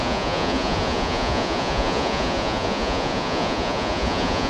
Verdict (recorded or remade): remade